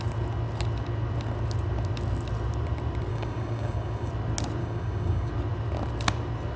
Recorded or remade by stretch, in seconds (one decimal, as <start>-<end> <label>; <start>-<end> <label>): 0.0-3.1 recorded; 3.1-4.1 remade; 4.1-4.6 recorded; 4.6-5.3 remade; 5.3-6.6 recorded